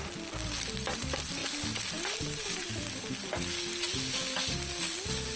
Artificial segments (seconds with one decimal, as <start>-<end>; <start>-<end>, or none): none